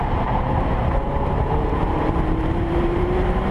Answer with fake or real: fake